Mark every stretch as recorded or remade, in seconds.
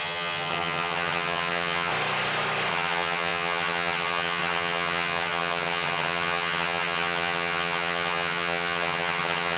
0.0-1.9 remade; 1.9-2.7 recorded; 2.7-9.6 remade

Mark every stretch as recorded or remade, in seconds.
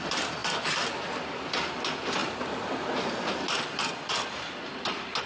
0.0-5.3 recorded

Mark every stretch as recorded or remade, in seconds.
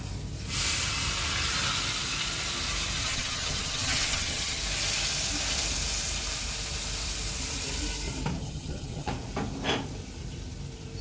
0.0-3.0 recorded; 3.0-4.6 remade; 4.6-8.4 recorded; 8.4-9.1 remade; 9.1-11.0 recorded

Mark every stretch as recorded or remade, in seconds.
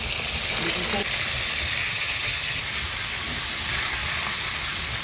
0.0-1.8 recorded; 1.8-2.6 remade; 2.6-5.0 recorded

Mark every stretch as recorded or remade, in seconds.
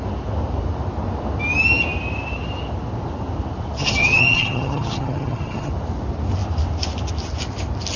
0.0-3.8 recorded; 3.8-5.7 remade; 5.7-8.0 recorded